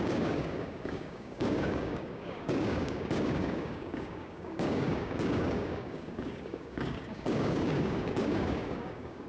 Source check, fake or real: fake